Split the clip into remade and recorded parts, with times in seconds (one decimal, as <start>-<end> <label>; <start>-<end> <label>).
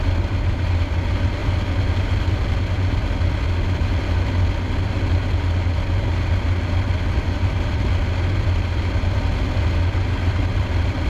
0.0-11.1 recorded